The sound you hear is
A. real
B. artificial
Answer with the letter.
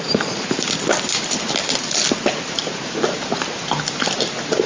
A